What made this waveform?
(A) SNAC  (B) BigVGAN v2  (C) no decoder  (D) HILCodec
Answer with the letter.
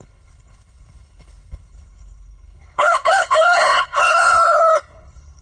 D